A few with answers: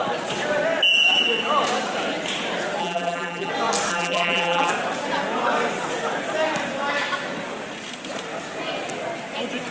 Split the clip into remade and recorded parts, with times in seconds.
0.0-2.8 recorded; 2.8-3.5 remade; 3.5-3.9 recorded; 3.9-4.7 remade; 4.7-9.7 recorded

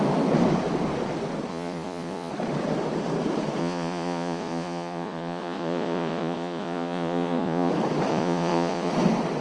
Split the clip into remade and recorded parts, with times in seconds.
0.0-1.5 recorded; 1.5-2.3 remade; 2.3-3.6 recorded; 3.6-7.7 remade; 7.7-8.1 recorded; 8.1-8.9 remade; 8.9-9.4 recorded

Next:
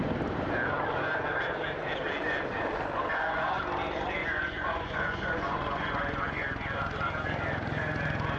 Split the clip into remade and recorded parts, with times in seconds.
0.0-3.1 recorded; 3.1-3.6 remade; 3.6-4.2 recorded; 4.2-6.8 remade; 6.8-8.4 recorded